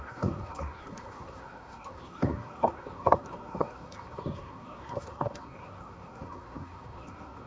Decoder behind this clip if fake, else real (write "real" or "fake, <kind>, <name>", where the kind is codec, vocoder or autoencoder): fake, codec, SNAC